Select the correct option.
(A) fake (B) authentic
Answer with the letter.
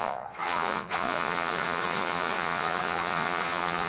A